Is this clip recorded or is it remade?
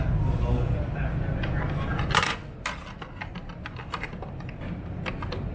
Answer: recorded